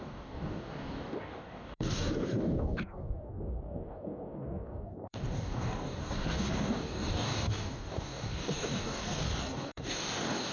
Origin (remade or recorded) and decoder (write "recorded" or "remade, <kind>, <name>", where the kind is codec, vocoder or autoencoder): remade, codec, DAC